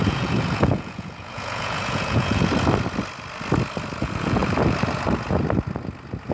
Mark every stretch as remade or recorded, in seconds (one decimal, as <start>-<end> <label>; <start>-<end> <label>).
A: 0.0-2.5 remade; 2.5-4.0 recorded; 4.0-4.4 remade; 4.4-6.3 recorded